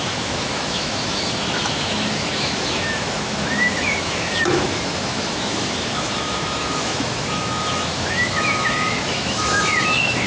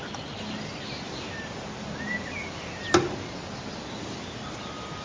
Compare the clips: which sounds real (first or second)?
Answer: second